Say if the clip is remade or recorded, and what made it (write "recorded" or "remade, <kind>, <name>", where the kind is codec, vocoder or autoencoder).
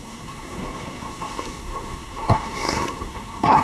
remade, codec, SNAC